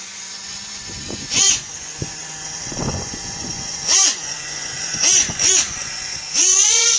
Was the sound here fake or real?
fake